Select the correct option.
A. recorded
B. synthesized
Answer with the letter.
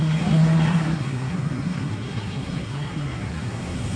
B